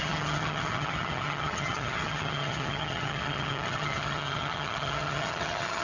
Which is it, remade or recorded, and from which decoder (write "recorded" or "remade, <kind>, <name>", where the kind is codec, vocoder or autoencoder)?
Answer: remade, vocoder, HiFi-GAN